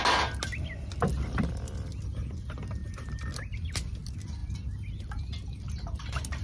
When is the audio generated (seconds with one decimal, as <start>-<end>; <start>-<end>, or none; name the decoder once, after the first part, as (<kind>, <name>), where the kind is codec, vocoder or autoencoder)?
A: 2.8-3.9 (vocoder, BigVGAN v2)